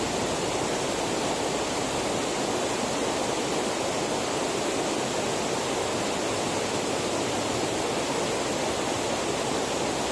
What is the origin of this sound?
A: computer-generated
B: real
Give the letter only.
B